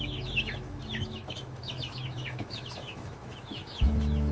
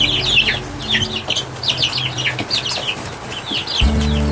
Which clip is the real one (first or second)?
second